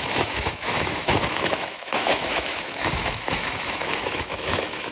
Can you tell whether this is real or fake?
fake